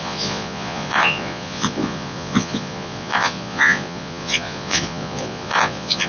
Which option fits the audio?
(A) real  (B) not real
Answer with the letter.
B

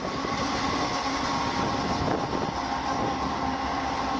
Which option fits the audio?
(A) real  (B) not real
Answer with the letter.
A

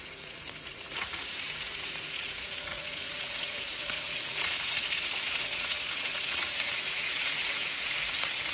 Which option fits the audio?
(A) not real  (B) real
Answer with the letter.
A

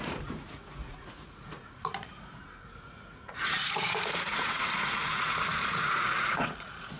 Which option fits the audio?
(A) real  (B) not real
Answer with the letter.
B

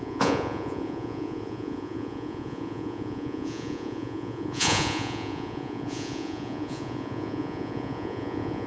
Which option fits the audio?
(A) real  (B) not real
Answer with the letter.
B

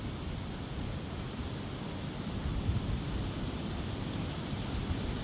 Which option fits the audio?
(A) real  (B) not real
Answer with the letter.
A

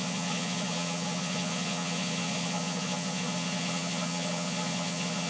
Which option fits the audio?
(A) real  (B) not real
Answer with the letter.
B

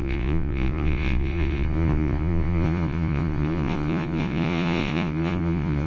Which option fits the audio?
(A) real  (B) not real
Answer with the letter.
B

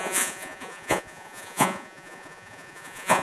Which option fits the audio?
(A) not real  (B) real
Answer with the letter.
A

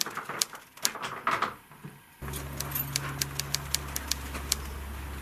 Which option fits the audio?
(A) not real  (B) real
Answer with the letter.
B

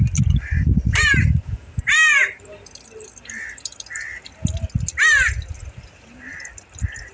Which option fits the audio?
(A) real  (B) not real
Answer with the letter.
A